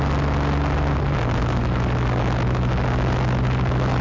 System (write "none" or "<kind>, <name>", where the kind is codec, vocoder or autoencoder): none